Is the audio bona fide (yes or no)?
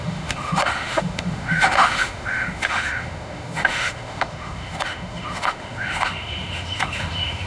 no